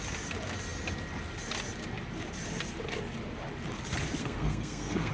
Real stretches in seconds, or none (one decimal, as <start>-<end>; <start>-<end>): 0.0-4.2